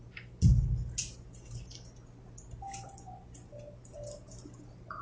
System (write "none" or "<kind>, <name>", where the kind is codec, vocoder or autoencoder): none